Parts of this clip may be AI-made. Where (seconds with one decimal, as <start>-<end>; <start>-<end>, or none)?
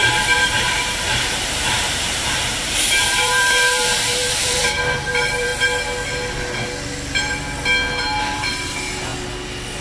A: 0.0-5.5; 8.0-9.1